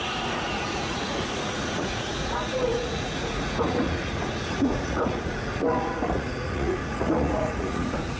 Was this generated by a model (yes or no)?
yes